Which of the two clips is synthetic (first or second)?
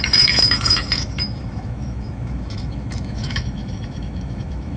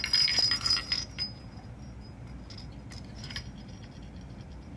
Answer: first